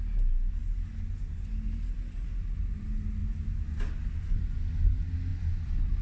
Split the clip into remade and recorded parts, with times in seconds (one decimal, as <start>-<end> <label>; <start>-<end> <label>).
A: 0.0-5.3 recorded; 5.3-6.0 remade